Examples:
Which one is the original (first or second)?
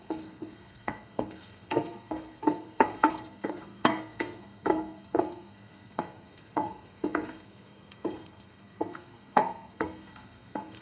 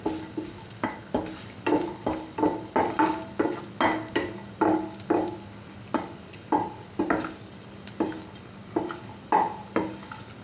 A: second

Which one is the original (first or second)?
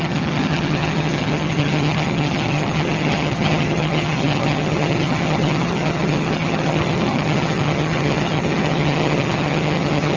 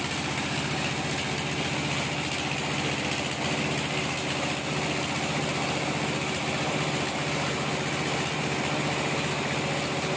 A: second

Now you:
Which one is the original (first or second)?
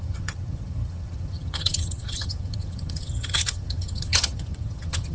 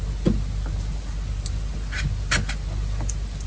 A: second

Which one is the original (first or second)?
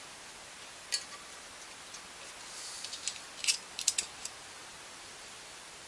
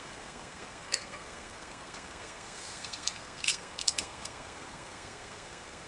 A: first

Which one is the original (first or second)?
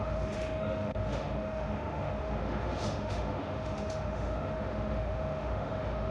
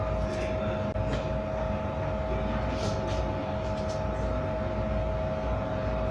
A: second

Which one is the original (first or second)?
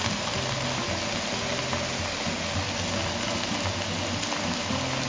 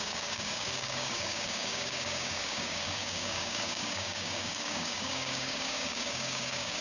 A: first